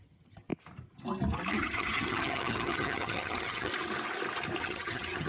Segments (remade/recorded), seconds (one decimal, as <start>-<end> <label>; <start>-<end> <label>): 0.0-0.5 remade; 0.5-1.5 recorded; 1.5-3.7 remade; 3.7-4.6 recorded; 4.6-5.3 remade